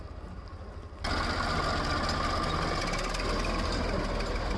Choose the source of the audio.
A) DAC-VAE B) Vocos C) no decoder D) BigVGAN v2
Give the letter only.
C